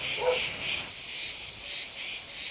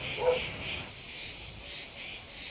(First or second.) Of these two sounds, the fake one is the first